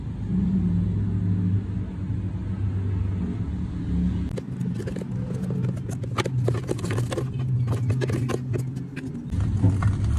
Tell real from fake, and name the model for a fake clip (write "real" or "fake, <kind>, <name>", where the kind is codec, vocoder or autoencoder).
real